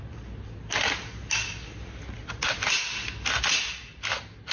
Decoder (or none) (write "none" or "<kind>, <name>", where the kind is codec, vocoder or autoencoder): none